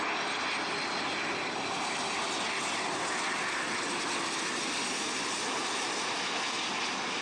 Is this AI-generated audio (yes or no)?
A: no